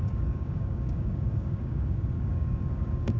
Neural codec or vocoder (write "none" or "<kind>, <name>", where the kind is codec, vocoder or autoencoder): codec, DAC